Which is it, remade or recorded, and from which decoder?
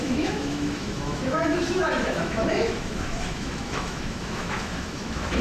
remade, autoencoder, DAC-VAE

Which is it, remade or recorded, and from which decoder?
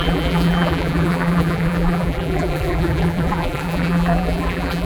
remade, vocoder, BigVGAN v2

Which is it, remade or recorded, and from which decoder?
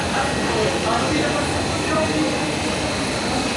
recorded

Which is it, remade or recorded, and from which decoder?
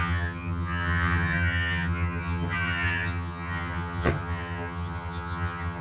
remade, vocoder, HiFi-GAN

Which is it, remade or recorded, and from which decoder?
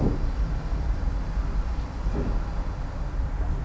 recorded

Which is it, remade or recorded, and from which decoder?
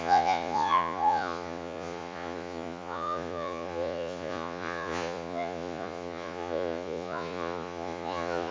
remade, vocoder, Vocos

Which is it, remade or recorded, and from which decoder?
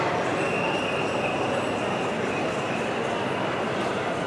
recorded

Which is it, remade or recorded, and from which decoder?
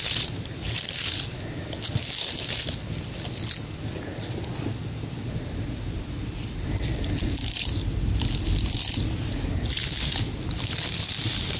recorded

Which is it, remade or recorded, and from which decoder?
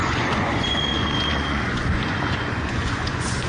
remade, vocoder, Vocos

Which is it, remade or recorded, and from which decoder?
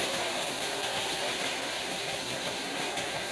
remade, codec, SNAC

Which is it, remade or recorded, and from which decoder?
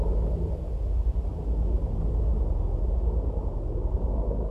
recorded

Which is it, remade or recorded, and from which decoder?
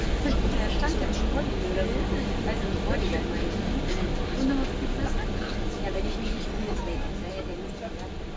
recorded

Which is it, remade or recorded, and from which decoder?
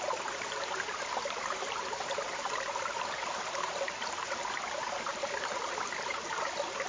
recorded